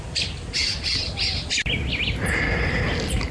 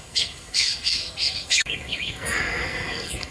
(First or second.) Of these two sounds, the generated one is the second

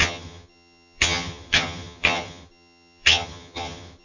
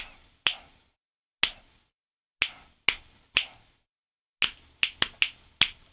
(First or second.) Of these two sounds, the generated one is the first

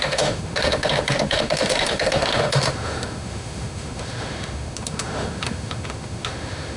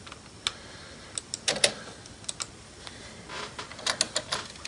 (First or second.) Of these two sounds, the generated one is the first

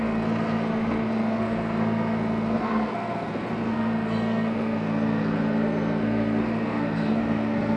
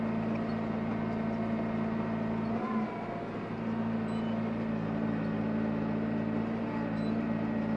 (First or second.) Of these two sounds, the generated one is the first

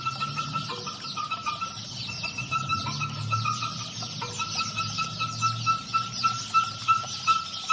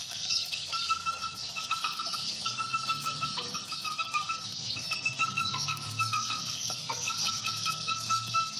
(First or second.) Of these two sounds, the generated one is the second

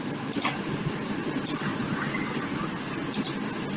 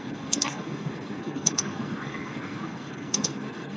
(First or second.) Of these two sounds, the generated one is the second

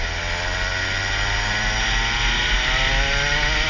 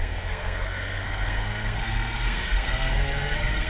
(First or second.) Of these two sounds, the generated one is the second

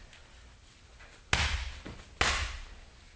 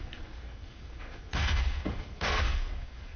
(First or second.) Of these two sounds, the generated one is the second